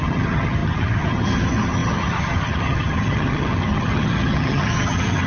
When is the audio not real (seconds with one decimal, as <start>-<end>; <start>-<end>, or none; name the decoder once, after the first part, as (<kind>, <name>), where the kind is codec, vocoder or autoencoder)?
0.0-5.3 (vocoder, HiFi-GAN)